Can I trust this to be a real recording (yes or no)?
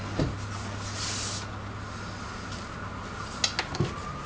yes